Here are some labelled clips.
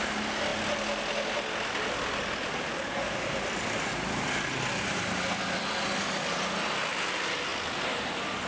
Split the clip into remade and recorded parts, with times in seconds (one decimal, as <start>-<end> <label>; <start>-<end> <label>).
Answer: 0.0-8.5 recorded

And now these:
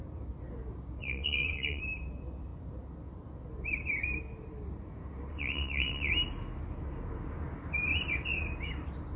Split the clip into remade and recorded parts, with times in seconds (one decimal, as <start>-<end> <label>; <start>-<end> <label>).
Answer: 0.0-1.0 recorded; 1.0-1.8 remade; 1.8-5.3 recorded; 5.3-6.1 remade; 6.1-9.2 recorded

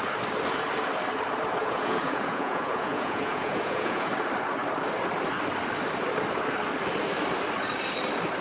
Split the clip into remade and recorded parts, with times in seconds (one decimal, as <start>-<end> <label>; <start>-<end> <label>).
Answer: 0.0-1.6 recorded; 1.6-4.1 remade; 4.1-8.4 recorded

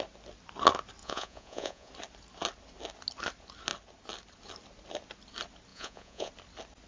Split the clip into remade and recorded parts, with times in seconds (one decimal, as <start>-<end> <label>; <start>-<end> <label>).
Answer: 0.0-1.0 recorded; 1.0-1.9 remade; 1.9-5.7 recorded; 5.7-6.3 remade; 6.3-6.9 recorded